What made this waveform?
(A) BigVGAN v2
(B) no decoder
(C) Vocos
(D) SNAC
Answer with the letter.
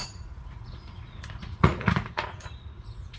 C